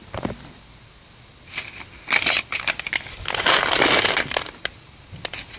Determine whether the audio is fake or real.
real